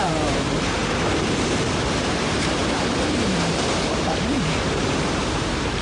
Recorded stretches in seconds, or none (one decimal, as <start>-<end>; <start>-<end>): 0.8-1.9